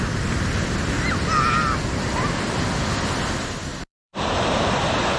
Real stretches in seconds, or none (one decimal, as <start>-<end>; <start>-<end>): 0.0-3.7; 4.6-5.2